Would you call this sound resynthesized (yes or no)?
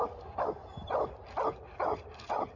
no